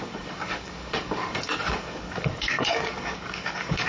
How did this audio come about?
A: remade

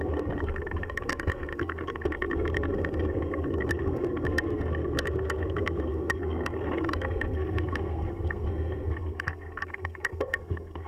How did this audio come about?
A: remade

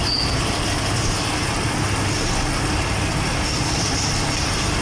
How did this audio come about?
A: recorded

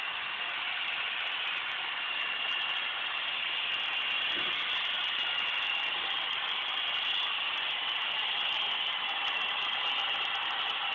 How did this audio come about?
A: recorded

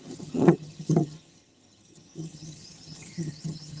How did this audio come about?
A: remade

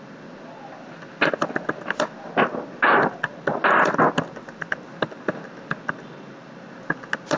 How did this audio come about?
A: recorded